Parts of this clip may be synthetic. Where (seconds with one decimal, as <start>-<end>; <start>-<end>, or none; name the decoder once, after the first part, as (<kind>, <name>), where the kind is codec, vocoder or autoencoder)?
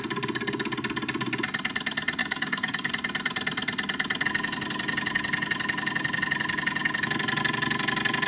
2.2-2.9 (codec, DAC)